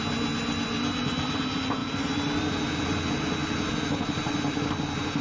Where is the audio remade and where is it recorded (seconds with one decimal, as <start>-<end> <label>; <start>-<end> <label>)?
0.0-5.2 recorded